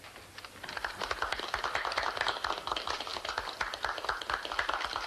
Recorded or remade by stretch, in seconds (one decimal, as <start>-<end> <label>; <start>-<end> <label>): 0.0-5.1 recorded